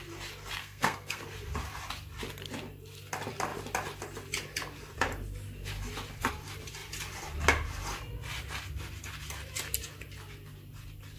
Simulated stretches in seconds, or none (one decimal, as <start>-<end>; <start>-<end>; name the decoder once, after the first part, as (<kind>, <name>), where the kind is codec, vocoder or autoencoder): 0.6-1.2 (codec, SNAC)